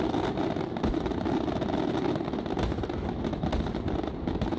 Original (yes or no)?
yes